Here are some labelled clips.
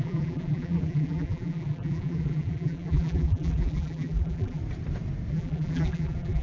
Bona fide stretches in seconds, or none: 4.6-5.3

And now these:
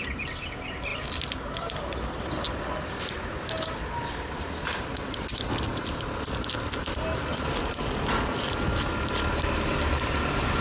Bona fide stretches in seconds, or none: 0.0-10.6